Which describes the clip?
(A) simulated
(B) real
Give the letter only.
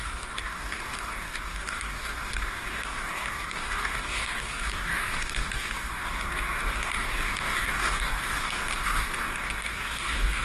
A